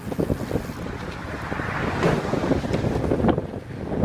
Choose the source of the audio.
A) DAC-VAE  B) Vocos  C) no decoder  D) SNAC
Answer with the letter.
C